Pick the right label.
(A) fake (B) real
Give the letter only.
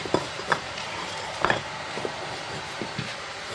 A